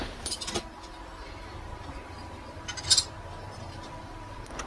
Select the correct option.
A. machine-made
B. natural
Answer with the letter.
B